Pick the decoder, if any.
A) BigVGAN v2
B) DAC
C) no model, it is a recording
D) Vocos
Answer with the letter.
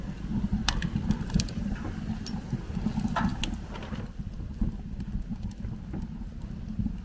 C